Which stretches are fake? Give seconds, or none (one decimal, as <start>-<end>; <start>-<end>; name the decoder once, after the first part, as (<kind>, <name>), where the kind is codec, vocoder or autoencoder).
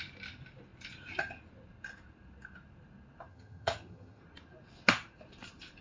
3.3-4.2 (vocoder, HiFi-GAN)